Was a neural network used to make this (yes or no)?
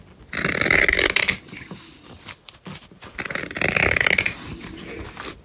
no